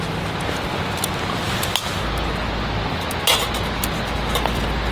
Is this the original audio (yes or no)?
yes